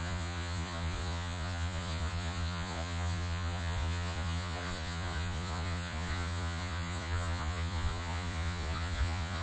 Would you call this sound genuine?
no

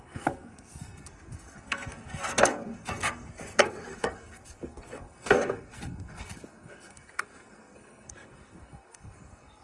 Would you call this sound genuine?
no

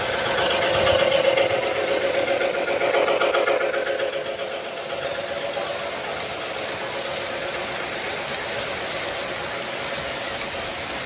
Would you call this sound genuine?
yes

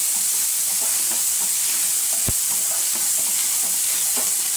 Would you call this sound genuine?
yes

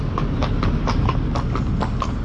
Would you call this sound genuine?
yes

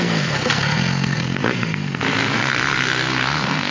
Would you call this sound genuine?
no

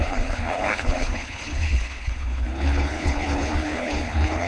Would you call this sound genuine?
no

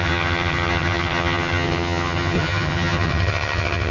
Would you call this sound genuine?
no